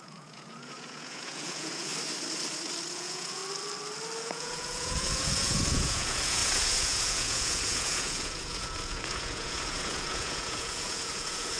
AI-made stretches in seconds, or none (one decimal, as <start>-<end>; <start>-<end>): 0.0-1.9; 2.9-3.4; 4.2-11.6